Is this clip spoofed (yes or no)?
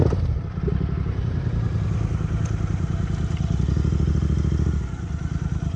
no